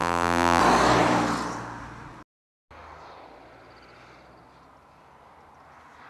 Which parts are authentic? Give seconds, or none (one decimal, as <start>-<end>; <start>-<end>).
0.6-6.1